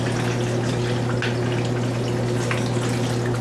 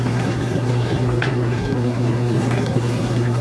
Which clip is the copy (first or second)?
second